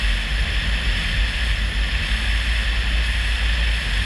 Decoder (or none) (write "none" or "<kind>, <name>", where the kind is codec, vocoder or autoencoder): none